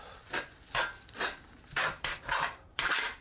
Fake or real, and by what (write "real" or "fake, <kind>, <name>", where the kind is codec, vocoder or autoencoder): fake, vocoder, BigVGAN v2